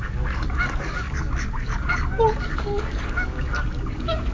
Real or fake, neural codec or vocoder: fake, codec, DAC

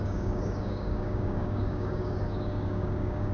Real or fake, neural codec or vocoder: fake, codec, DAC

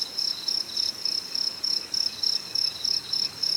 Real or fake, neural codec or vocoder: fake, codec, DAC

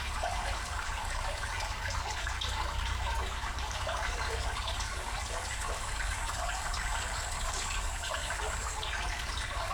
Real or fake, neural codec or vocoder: fake, codec, DAC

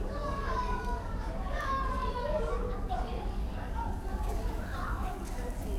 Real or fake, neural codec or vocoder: fake, codec, DAC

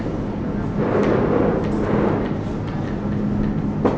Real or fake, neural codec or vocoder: real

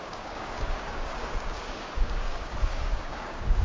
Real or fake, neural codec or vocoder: fake, codec, DAC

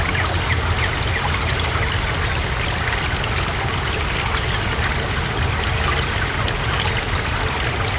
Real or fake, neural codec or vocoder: real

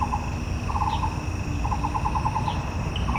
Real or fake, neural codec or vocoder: real